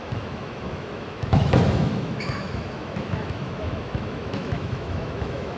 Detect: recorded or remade remade